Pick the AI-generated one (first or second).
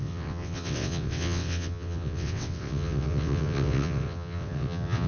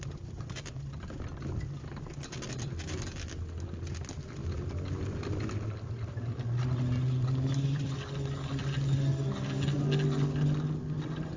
first